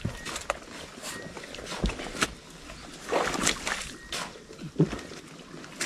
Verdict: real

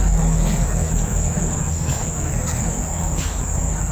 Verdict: fake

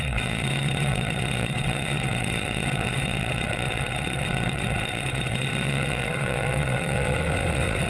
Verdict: fake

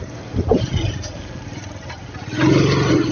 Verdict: fake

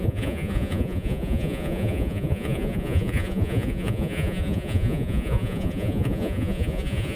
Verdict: fake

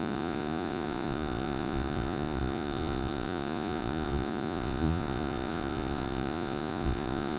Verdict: fake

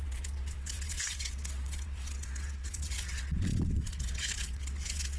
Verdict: fake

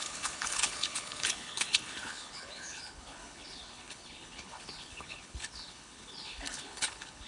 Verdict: fake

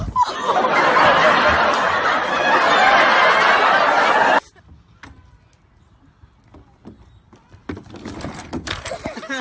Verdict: real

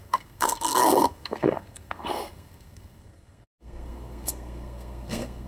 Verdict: fake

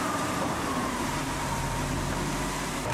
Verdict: fake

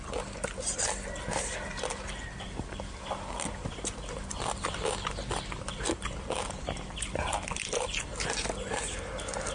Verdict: real